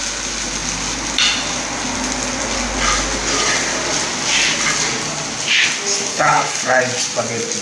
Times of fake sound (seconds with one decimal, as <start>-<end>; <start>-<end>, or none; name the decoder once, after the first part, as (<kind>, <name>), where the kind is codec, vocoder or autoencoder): 6.1-6.8 (codec, HILCodec)